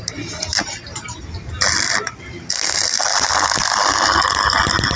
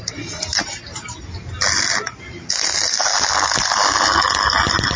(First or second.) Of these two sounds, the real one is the second